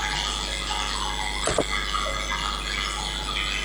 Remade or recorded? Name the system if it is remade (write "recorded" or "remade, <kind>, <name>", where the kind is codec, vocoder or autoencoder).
recorded